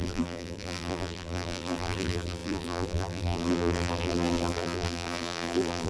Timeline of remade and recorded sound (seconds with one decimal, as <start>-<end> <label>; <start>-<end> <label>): 0.0-5.9 remade